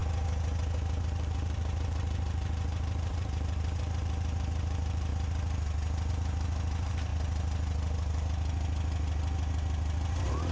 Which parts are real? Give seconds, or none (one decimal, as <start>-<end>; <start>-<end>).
0.0-1.0; 5.1-6.1; 7.1-10.5